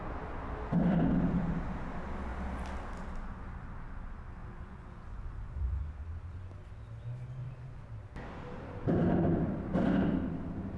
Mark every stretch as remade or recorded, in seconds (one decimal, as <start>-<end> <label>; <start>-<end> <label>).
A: 0.0-4.4 recorded; 4.4-5.8 remade; 5.8-7.4 recorded; 7.4-7.9 remade; 7.9-10.8 recorded

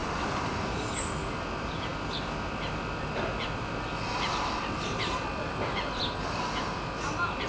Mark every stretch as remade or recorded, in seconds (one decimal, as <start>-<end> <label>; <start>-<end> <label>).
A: 0.0-7.5 recorded

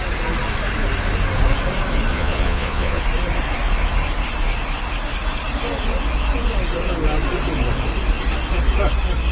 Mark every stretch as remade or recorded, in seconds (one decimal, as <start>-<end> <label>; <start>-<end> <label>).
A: 0.0-2.1 recorded; 2.1-3.0 remade; 3.0-9.3 recorded

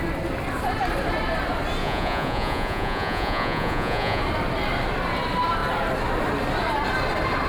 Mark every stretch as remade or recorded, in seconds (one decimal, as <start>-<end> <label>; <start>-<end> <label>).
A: 0.0-1.8 recorded; 1.8-4.2 remade; 4.2-7.5 recorded

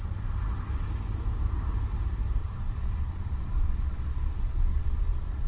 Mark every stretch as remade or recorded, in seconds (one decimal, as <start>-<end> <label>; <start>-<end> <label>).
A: 0.0-2.4 recorded; 2.4-5.5 remade

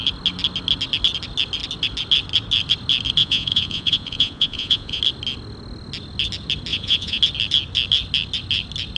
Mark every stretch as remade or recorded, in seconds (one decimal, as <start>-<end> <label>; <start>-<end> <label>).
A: 0.0-3.2 recorded; 3.2-5.0 remade; 5.0-6.7 recorded; 6.7-7.2 remade; 7.2-9.0 recorded

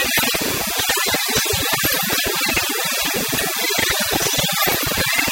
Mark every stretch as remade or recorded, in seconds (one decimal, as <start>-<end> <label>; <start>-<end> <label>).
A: 0.0-5.3 recorded